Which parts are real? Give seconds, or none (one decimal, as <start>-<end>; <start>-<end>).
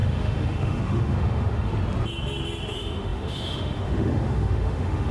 1.8-2.7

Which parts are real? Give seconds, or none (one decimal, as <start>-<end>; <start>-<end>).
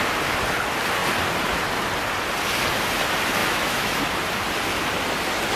0.0-3.4; 4.0-5.6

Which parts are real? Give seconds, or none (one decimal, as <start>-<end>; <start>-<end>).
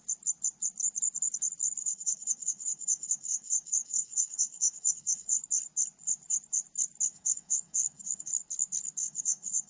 0.0-1.8; 5.4-7.1; 8.3-9.0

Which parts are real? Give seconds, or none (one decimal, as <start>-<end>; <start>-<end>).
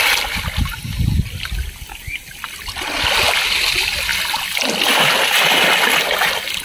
0.0-6.6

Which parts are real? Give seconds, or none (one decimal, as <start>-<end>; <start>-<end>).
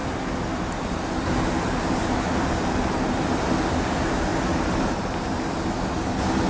0.0-6.5